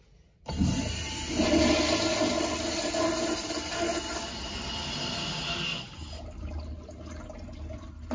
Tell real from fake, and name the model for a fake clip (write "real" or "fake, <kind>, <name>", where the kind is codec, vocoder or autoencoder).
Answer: real